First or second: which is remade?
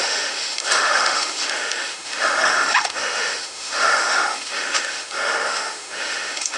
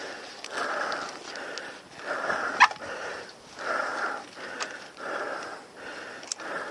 first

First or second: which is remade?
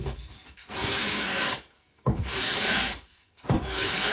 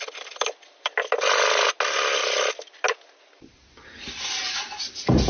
first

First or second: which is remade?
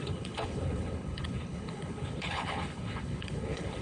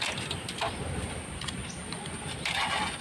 first